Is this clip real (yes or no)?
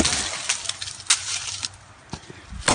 yes